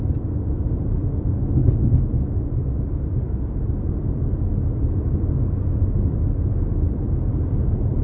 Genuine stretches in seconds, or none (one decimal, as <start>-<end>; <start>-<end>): 0.0-8.0